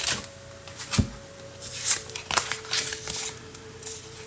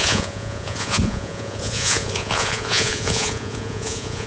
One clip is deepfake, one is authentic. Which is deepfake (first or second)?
second